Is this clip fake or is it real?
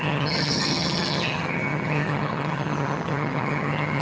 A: fake